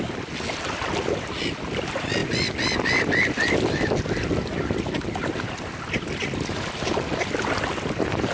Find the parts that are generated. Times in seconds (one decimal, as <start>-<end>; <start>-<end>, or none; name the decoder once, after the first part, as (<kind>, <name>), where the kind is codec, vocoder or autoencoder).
none